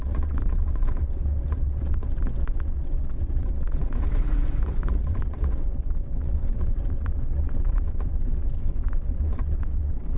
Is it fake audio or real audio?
fake